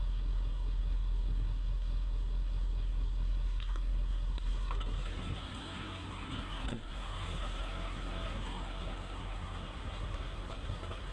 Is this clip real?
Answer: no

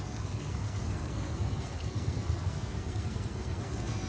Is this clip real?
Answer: no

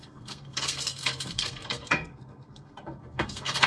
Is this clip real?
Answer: no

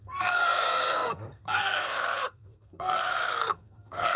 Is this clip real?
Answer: no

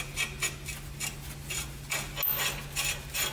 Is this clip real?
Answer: yes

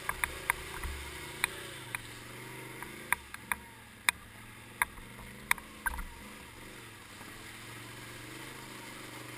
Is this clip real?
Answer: yes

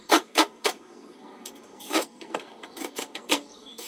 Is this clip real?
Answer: no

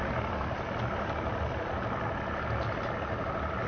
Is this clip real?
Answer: yes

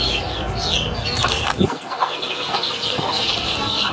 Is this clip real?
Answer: no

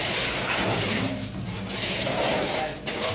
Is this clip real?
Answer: yes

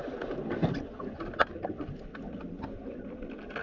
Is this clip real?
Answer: yes